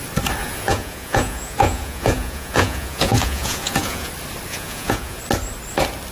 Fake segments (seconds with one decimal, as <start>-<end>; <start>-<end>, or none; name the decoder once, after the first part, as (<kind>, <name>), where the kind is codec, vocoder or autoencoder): 0.4-4.1 (vocoder, Vocos); 4.5-5.2